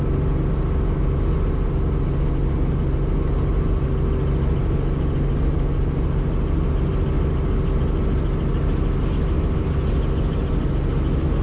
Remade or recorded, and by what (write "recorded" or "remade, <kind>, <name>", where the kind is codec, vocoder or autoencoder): recorded